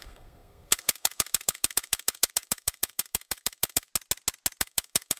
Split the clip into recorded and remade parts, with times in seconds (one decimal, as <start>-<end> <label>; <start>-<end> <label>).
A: 0.0-3.9 remade; 3.9-4.6 recorded; 4.6-5.2 remade